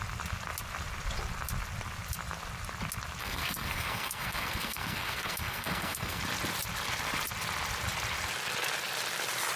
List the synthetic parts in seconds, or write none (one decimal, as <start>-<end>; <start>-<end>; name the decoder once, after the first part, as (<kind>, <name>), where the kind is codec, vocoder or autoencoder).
3.2-6.2 (codec, SNAC)